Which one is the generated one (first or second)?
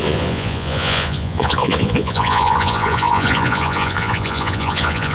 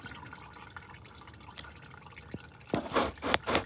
first